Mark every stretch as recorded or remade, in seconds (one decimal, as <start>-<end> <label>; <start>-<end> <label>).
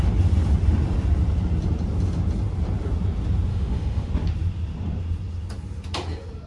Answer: 0.0-3.5 recorded; 3.5-4.1 remade; 4.1-6.5 recorded